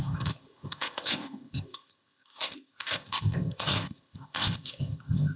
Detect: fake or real fake